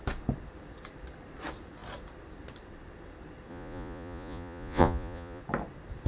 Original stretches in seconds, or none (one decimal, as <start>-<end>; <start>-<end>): 0.0-3.5; 5.4-6.1